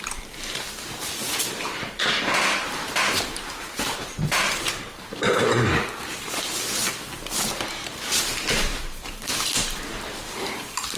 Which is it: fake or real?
fake